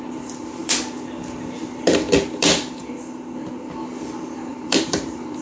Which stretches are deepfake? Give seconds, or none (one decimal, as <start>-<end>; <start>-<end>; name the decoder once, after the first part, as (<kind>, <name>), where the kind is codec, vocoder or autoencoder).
4.5-5.4 (vocoder, BigVGAN v2)